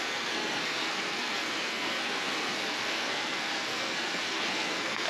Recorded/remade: remade